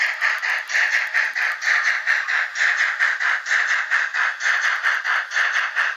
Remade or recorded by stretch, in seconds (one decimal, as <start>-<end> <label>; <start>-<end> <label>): 0.0-2.5 remade; 2.5-3.0 recorded; 3.0-4.1 remade; 4.1-4.8 recorded; 4.8-6.0 remade